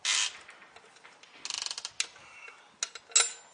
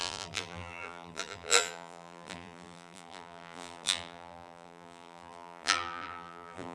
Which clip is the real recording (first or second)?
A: first